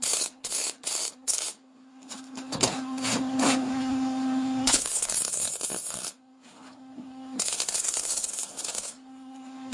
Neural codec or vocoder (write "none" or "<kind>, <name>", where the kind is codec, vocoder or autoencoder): codec, SNAC